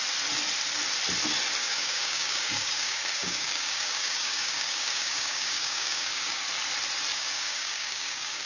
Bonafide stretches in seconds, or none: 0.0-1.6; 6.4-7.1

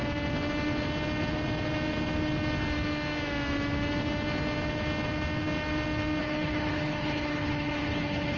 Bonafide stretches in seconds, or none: 0.0-6.2

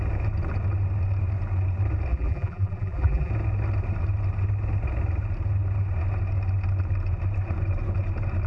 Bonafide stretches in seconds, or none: 0.0-2.1; 3.3-8.5